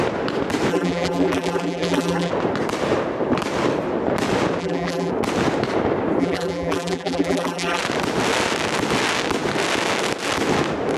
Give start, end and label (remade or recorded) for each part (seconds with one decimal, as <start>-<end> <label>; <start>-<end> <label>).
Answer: 0.0-0.7 recorded; 0.7-2.3 remade; 2.3-4.6 recorded; 4.6-5.1 remade; 5.1-6.2 recorded; 6.2-7.8 remade; 7.8-11.0 recorded